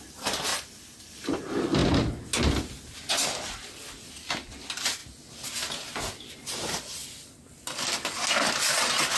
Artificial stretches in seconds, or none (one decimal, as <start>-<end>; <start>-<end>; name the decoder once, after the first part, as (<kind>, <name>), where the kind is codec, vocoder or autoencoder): 0.0-1.8 (vocoder, BigVGAN v2); 4.0-5.0; 6.3-7.0; 8.4-9.2